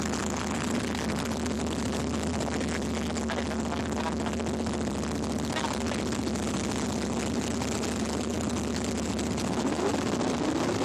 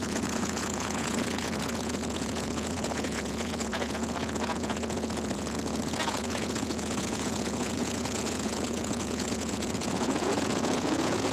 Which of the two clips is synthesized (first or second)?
second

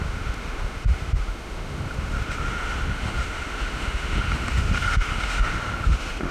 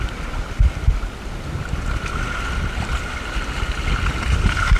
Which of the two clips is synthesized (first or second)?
first